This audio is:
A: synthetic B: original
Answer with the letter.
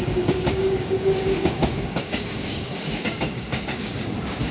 A